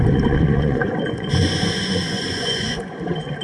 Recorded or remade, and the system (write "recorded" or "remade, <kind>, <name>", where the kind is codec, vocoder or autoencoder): remade, vocoder, Vocos